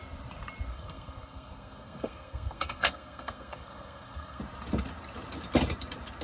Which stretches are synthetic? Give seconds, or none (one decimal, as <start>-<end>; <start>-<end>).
0.7-4.4